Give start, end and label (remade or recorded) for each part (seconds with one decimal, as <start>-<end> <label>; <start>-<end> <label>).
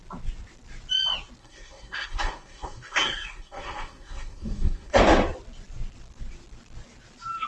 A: 0.0-1.4 recorded; 1.4-5.0 remade; 5.0-7.5 recorded